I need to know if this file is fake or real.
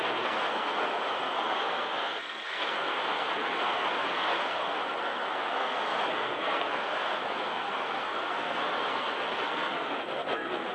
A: fake